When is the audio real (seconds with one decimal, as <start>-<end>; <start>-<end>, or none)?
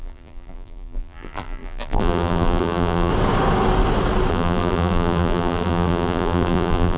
3.1-4.3